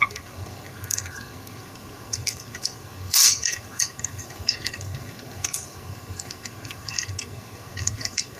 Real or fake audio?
fake